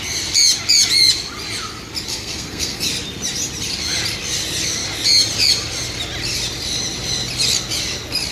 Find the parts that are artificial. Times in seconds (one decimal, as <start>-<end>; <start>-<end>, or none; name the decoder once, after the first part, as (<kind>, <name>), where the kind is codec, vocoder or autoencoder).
2.1-2.8 (codec, SNAC)